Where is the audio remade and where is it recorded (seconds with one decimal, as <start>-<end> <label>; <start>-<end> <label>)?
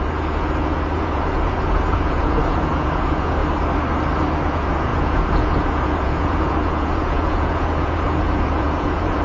0.0-3.4 remade; 3.4-4.5 recorded; 4.5-9.2 remade